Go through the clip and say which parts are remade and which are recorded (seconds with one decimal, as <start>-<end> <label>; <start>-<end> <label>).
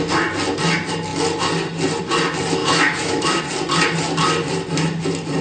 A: 0.0-2.6 recorded; 2.6-3.4 remade; 3.4-5.4 recorded